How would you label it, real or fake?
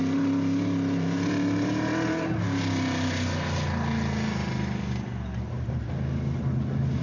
real